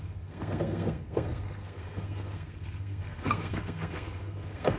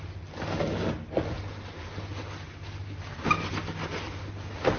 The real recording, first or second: second